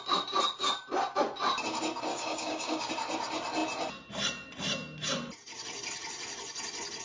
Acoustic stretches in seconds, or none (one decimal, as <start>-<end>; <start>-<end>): 0.0-2.1; 2.9-7.0